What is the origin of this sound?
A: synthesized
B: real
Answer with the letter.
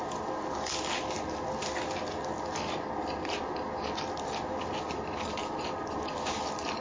B